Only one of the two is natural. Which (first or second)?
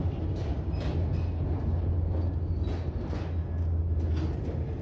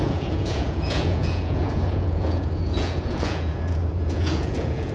first